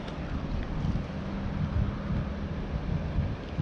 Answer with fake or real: real